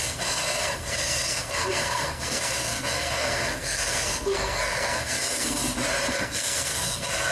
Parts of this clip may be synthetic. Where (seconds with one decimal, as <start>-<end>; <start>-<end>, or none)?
0.0-5.6; 6.1-7.3